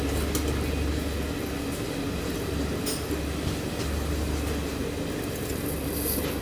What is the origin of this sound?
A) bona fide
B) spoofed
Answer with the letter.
A